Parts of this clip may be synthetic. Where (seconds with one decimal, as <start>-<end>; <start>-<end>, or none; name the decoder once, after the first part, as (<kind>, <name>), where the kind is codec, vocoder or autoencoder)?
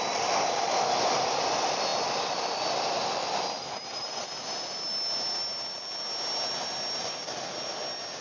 none